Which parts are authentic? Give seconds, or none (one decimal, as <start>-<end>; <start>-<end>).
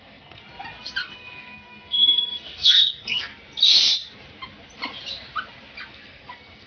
0.4-1.0; 3.3-5.9